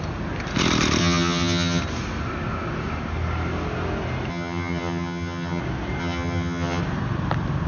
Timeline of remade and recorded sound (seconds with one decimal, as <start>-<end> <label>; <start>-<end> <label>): 0.0-1.0 recorded; 1.0-1.8 remade; 1.8-4.3 recorded; 4.3-5.6 remade; 5.6-6.0 recorded; 6.0-6.8 remade; 6.8-7.7 recorded